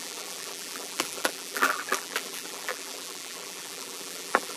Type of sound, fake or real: fake